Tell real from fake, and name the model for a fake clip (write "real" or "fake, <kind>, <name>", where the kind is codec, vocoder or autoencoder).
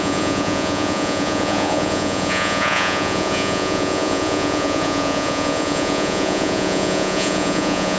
fake, vocoder, Vocos